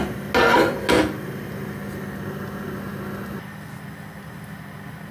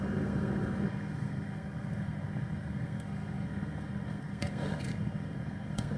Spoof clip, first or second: second